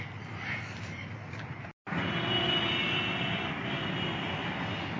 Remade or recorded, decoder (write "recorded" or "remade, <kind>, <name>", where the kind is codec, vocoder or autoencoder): recorded